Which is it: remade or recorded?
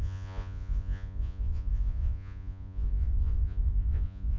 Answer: remade